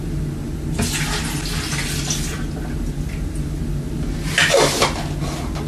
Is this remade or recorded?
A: recorded